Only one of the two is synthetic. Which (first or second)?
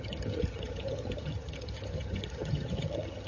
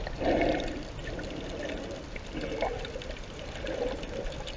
first